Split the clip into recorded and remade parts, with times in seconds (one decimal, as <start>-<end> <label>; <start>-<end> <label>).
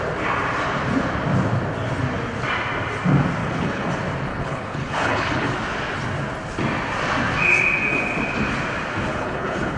0.0-3.4 recorded; 3.4-3.9 remade; 3.9-4.3 recorded; 4.3-5.5 remade; 5.5-9.1 recorded; 9.1-9.8 remade